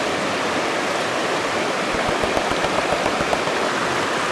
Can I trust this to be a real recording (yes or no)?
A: yes